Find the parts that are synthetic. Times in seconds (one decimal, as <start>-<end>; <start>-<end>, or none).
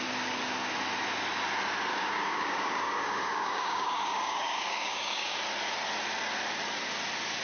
1.9-5.4